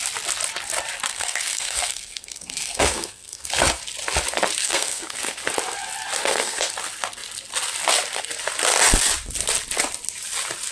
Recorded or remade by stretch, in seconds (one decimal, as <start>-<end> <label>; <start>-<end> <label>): 0.0-1.1 recorded; 1.1-3.5 remade; 3.5-4.6 recorded; 4.6-5.4 remade; 5.4-6.2 recorded; 6.2-6.7 remade; 6.7-10.7 recorded